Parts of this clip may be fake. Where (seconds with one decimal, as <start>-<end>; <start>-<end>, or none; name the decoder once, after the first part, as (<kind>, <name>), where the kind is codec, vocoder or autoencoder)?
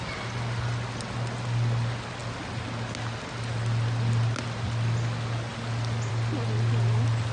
none